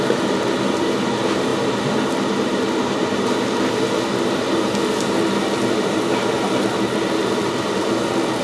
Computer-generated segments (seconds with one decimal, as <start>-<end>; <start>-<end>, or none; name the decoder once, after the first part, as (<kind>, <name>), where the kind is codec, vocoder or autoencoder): none